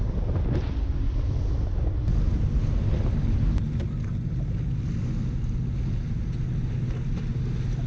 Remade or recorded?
recorded